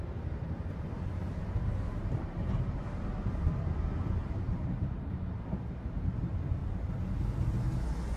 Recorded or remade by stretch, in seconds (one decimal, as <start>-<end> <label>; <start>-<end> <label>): 0.0-6.6 remade; 6.6-8.2 recorded